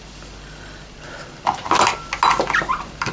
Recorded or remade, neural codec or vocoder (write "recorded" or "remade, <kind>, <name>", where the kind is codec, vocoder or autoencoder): recorded